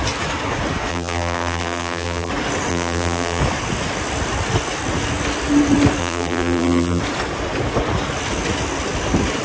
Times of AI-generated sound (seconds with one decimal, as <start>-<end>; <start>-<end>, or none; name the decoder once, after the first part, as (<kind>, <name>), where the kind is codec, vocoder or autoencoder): 0.9-2.3 (vocoder, BigVGAN v2); 2.7-3.4; 6.0-7.0